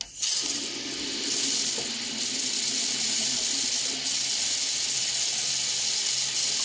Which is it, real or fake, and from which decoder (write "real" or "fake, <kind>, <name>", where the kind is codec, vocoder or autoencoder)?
real